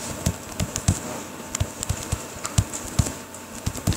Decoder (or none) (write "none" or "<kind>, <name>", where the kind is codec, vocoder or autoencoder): none